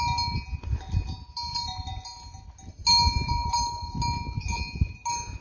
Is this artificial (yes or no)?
no